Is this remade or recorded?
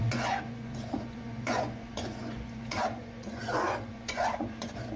remade